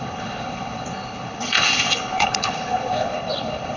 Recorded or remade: remade